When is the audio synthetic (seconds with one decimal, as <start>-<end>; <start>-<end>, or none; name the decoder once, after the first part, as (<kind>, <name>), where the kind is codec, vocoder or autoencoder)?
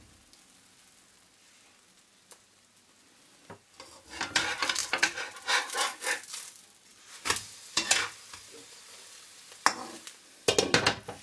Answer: none